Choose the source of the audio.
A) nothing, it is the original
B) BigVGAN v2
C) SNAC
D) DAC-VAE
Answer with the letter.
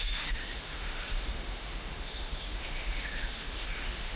D